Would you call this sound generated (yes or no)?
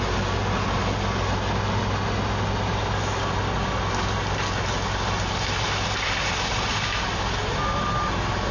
no